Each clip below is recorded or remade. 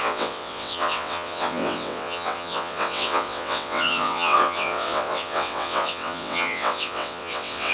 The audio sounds remade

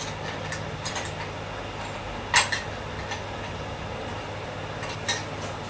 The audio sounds recorded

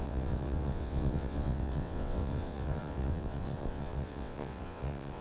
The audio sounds remade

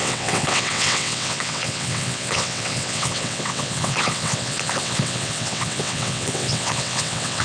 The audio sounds remade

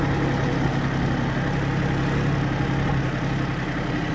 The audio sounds recorded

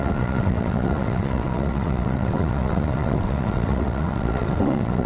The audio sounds remade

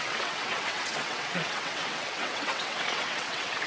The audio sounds remade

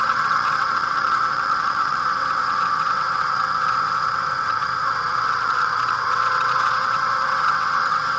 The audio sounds remade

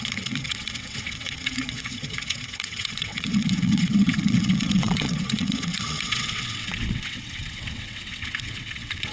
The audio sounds remade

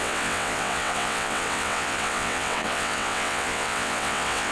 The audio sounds remade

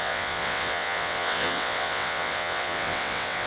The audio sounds remade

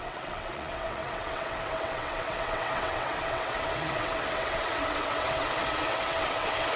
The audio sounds remade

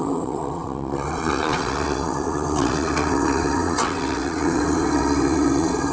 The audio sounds remade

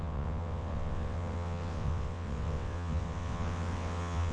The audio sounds remade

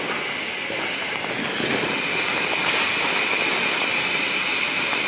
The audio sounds recorded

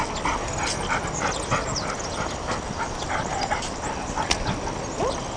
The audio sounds recorded